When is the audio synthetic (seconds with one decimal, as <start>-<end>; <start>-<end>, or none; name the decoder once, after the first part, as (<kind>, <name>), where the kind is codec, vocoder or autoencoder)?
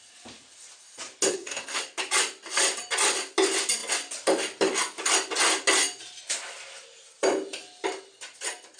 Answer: 1.3-1.8 (codec, SNAC)